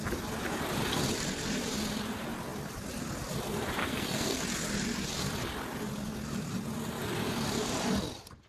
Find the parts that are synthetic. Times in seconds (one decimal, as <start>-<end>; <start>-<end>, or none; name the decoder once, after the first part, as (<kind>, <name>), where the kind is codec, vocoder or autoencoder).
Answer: 3.8-4.4 (codec, SNAC)